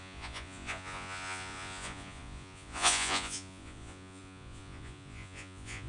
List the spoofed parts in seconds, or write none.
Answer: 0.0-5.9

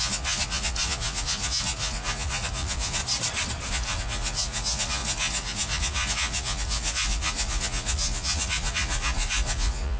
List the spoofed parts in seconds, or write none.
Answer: 0.0-3.0; 3.7-10.0

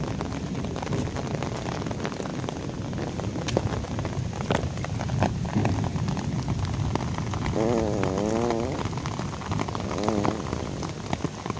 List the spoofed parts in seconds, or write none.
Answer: none

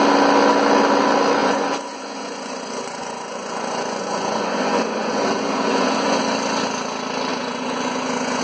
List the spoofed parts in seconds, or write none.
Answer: 1.4-6.2; 7.3-8.4

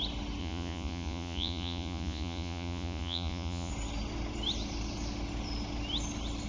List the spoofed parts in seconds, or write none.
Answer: 0.4-3.7